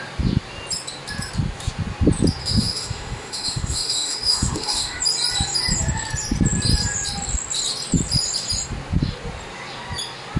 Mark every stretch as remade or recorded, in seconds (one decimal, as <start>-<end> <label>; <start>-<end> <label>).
0.0-2.4 recorded; 2.4-5.0 remade; 5.0-10.4 recorded